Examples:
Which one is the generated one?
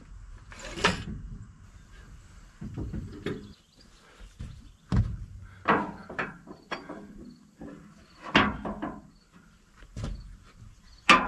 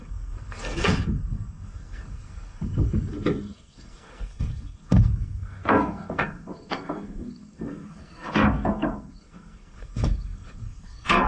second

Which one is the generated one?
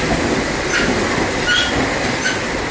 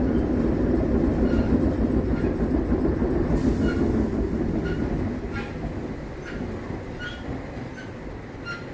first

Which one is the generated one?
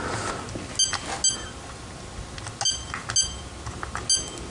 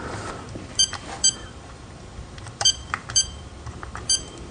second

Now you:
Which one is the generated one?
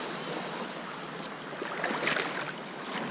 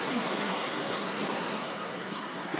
second